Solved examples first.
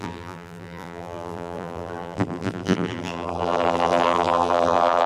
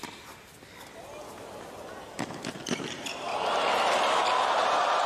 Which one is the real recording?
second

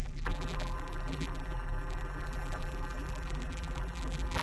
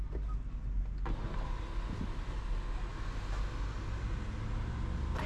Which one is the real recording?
second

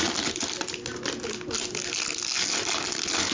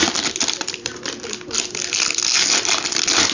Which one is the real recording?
first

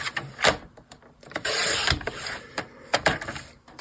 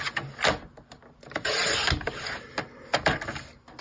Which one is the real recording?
second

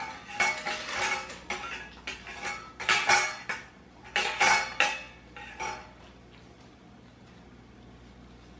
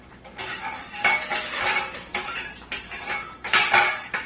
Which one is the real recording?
first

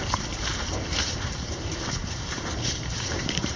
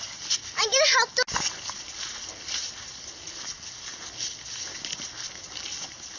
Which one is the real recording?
second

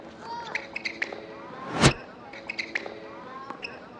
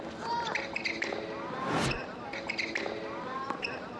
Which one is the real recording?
first